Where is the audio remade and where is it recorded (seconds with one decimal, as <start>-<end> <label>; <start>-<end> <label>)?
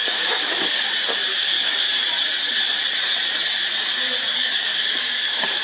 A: 0.0-0.9 remade; 0.9-1.3 recorded; 1.3-1.9 remade; 1.9-4.3 recorded; 4.3-5.6 remade